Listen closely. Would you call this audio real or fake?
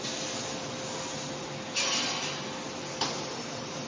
real